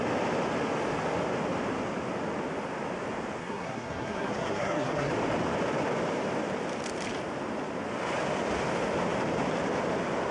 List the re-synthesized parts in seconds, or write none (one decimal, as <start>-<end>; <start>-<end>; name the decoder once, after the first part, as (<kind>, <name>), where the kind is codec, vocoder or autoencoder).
3.4-5.1 (codec, SNAC)